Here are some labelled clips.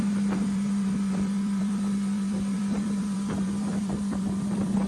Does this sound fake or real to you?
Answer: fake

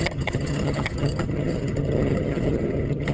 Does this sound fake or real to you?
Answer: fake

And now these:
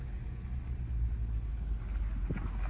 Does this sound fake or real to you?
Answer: real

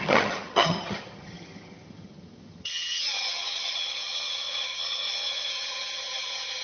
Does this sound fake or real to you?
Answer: fake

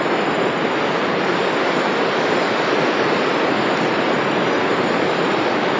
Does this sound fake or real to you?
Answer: real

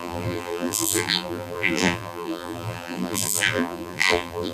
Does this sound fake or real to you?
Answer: fake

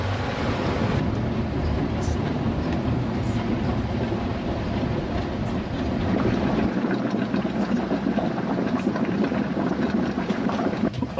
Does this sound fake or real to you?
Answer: fake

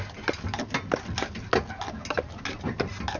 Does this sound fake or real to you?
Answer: real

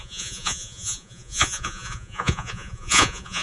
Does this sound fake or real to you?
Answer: fake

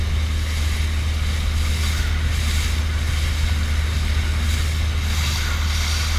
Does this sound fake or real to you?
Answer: real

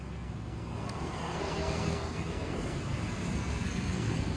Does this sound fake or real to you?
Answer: fake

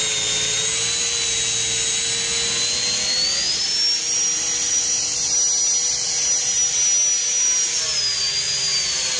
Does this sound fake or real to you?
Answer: real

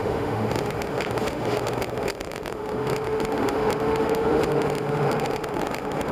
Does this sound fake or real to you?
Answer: fake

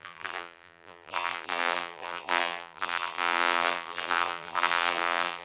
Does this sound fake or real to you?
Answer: fake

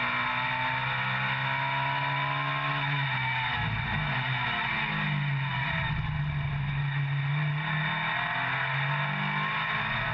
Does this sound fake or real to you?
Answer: real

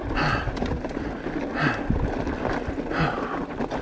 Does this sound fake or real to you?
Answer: real